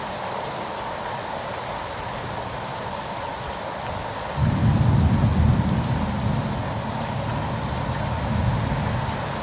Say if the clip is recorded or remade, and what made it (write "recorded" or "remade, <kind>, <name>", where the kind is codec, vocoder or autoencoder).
recorded